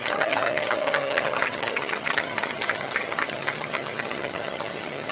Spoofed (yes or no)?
yes